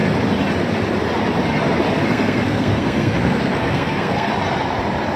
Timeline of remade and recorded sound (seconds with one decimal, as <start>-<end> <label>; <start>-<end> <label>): 0.0-2.1 recorded; 2.1-4.3 remade; 4.3-5.2 recorded